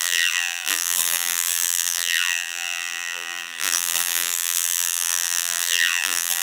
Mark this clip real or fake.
fake